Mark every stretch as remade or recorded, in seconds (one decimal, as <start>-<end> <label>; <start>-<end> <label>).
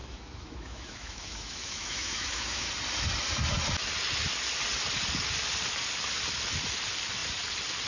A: 0.0-2.7 remade; 2.7-7.9 recorded